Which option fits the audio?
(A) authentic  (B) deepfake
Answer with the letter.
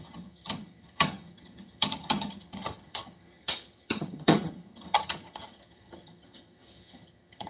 B